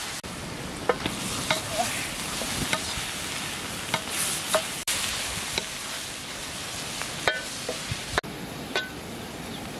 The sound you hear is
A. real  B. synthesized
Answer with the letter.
A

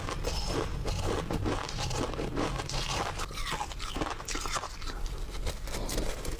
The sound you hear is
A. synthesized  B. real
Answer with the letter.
B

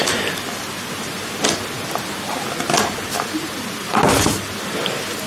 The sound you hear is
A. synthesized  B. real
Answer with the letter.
B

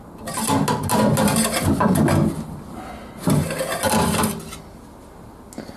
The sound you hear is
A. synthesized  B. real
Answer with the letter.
B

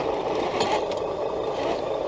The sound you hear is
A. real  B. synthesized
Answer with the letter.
A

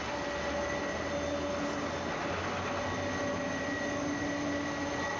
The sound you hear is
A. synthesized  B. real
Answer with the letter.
B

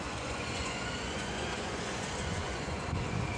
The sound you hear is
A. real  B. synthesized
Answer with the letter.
B